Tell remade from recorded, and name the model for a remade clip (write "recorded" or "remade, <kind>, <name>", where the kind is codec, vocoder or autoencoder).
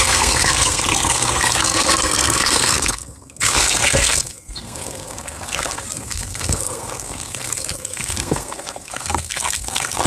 remade, codec, SNAC